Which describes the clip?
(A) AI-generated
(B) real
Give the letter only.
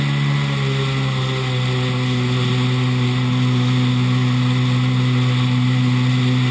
B